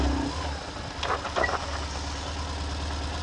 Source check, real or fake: real